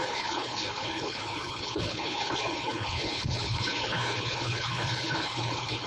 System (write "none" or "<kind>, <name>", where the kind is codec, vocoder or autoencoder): codec, HILCodec